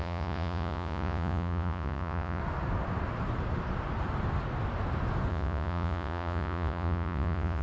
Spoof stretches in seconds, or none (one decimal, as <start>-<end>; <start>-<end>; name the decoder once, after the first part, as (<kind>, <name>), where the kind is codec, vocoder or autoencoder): 0.0-2.4 (vocoder, Vocos); 5.3-7.6